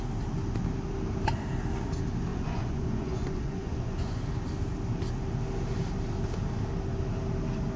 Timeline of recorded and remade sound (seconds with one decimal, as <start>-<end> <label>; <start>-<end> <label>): 0.0-2.3 recorded; 2.3-4.2 remade; 4.2-7.8 recorded